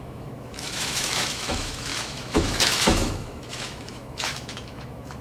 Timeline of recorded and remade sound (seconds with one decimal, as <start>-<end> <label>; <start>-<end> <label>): 0.0-5.2 remade